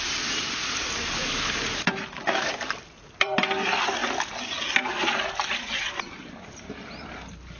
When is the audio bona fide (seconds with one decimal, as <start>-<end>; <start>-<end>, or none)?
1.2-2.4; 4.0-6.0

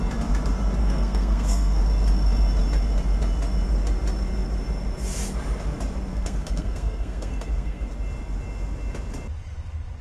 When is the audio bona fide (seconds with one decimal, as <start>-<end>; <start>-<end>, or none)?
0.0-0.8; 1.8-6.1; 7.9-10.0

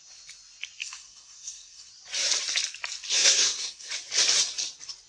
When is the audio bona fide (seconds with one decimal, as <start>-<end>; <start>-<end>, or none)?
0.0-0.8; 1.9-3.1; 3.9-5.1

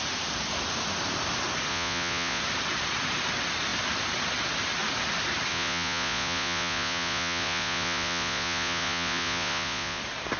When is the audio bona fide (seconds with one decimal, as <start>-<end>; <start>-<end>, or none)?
0.0-1.7; 2.4-5.5; 10.0-10.4

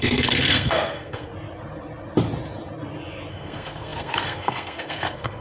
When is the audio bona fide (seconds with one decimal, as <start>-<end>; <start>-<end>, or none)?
1.3-3.3